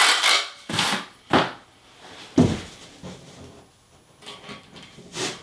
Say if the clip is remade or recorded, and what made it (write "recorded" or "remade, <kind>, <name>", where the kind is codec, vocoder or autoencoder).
recorded